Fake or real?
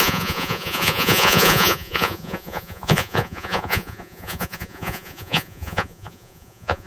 fake